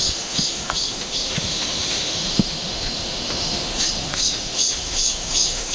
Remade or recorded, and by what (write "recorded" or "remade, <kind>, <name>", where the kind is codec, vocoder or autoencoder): remade, autoencoder, DAC-VAE